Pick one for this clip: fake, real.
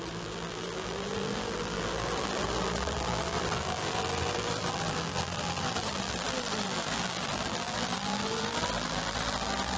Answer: fake